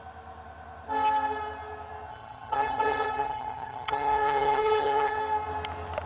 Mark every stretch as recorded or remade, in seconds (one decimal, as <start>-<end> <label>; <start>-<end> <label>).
0.0-2.1 recorded; 2.1-5.2 remade; 5.2-6.1 recorded

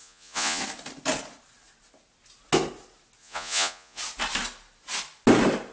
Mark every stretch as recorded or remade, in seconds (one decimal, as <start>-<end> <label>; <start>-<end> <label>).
0.0-0.6 remade; 0.6-3.2 recorded; 3.2-4.0 remade; 4.0-5.7 recorded

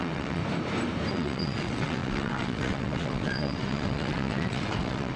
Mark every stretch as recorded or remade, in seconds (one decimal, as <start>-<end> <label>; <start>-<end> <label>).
0.0-0.4 remade; 0.4-1.1 recorded; 1.1-5.2 remade